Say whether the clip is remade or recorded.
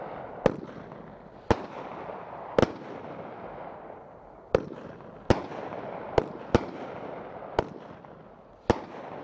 recorded